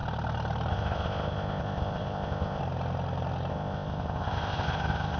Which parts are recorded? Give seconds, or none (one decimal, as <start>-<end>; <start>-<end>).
0.0-0.7; 2.6-3.5